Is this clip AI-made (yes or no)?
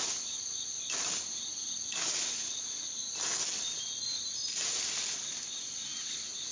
no